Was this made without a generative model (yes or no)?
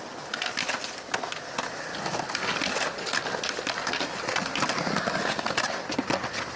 yes